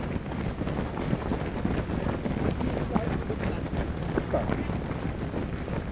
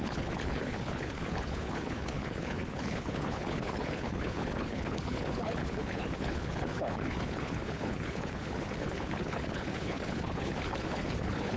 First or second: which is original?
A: first